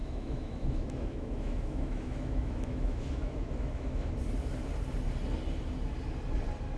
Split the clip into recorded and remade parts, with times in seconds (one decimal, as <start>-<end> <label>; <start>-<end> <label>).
0.0-4.1 remade; 4.1-6.8 recorded